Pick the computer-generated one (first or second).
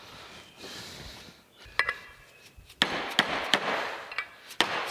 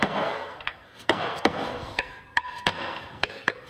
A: second